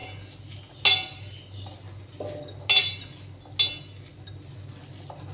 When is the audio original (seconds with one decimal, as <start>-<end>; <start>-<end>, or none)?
0.0-5.3